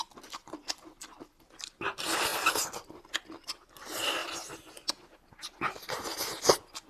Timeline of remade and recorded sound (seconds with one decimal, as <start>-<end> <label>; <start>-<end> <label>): 0.0-6.9 recorded